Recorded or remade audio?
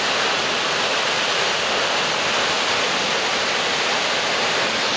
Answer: recorded